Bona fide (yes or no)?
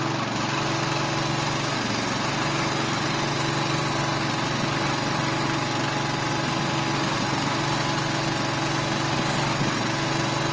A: yes